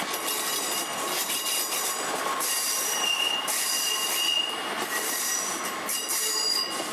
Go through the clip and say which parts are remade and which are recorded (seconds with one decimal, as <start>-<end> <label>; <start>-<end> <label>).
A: 0.0-0.9 recorded; 0.9-3.7 remade; 3.7-6.9 recorded